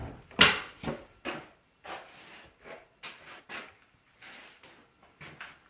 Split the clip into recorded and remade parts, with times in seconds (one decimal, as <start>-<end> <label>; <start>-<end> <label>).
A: 0.0-5.7 recorded